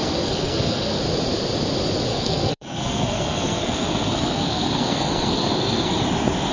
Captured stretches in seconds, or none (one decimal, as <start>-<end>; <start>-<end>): 1.0-2.1; 6.0-6.5